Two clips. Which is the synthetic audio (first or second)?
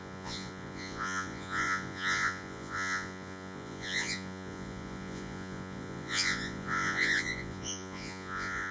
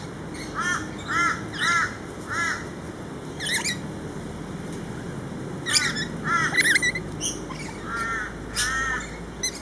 first